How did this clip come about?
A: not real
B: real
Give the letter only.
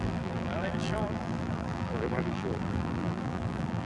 A